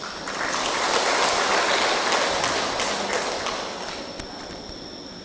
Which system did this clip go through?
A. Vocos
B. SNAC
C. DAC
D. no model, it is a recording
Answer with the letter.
D